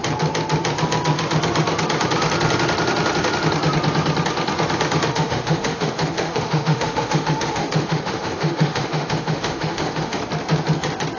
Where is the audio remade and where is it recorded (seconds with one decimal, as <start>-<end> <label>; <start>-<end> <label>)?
0.0-5.1 recorded; 5.1-10.2 remade; 10.2-11.2 recorded